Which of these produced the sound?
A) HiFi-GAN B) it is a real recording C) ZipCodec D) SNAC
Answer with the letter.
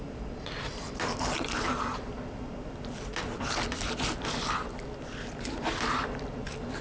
B